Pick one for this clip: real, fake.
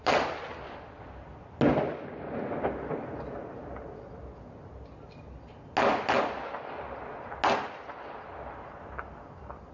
real